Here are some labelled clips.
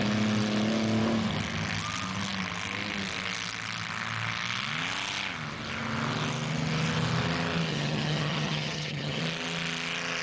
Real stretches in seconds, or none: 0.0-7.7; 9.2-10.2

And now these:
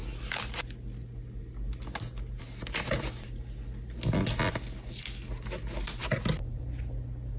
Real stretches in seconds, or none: 0.0-6.0; 6.6-7.4

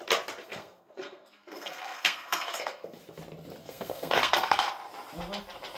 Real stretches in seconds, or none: 0.0-0.4; 3.0-3.6; 4.7-5.8